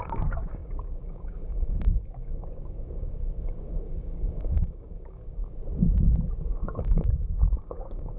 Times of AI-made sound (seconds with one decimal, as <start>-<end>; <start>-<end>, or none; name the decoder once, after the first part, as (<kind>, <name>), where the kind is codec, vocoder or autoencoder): 0.0-5.4 (codec, DAC); 6.4-8.2